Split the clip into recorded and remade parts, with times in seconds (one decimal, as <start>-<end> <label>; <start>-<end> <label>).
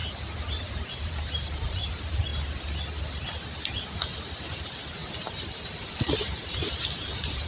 0.0-0.7 recorded; 0.7-2.3 remade; 2.3-4.6 recorded; 4.6-7.5 remade